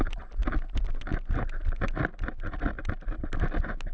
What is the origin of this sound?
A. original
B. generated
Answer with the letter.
A